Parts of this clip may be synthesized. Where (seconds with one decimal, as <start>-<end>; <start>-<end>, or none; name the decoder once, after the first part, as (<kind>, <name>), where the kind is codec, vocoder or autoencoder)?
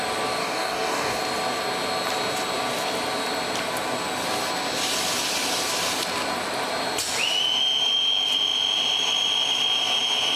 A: 0.4-1.2 (codec, DAC)